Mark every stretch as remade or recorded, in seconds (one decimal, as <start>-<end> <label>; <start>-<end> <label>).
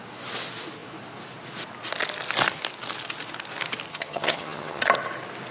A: 0.0-3.9 recorded; 3.9-4.8 remade; 4.8-5.5 recorded